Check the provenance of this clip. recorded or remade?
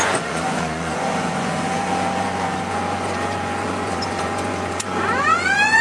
remade